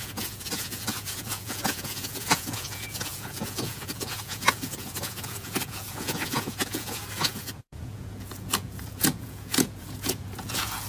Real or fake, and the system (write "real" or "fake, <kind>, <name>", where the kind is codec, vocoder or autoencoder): fake, vocoder, Vocos